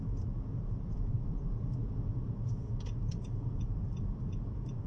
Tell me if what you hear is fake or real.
fake